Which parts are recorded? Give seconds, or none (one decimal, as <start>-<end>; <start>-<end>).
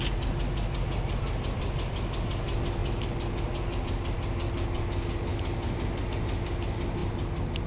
0.0-7.7